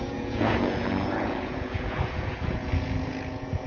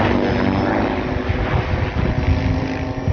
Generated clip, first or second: first